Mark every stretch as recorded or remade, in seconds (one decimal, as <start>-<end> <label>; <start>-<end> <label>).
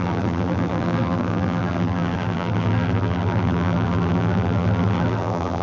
0.0-5.6 remade